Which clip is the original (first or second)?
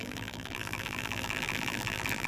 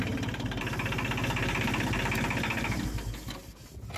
second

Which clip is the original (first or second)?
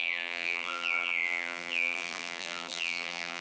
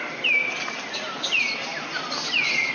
second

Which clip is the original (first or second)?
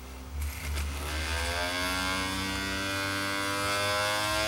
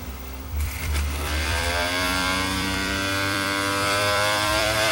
first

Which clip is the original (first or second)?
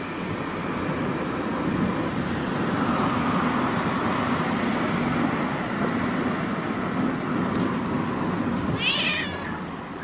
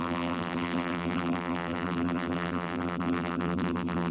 first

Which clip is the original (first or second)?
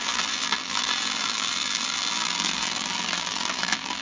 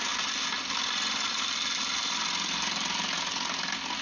second